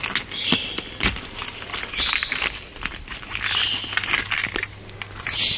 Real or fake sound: real